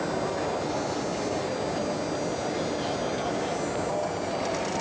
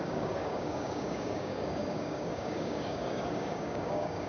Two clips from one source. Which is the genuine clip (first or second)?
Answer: first